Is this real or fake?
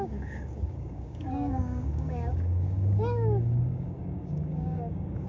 fake